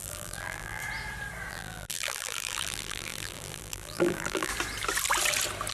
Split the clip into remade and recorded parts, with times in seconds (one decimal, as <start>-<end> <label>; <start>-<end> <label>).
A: 0.0-0.8 remade; 0.8-1.5 recorded; 1.5-4.5 remade; 4.5-5.7 recorded